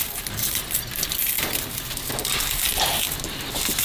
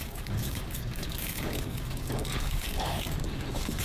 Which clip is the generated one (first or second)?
second